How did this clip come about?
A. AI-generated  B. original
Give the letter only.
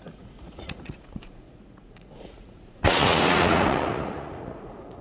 A